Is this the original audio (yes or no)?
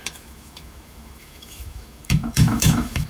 no